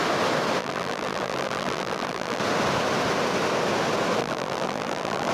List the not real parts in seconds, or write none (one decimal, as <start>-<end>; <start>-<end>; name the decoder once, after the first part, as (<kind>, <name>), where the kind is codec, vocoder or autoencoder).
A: 0.6-2.4 (vocoder, BigVGAN v2); 4.2-5.3